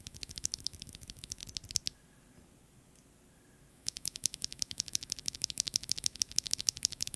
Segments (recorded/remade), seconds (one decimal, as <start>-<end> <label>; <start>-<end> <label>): 0.0-1.4 remade; 1.4-3.7 recorded; 3.7-7.2 remade